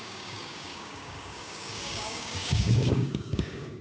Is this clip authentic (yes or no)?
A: no